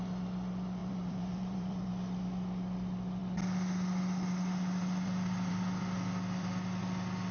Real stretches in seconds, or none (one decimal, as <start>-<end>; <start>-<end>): 0.0-0.8; 1.9-7.3